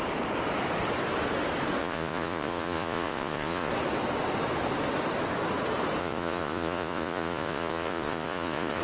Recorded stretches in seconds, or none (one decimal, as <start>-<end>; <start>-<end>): 0.0-1.8; 3.7-6.0